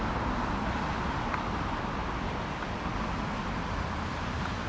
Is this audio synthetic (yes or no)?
no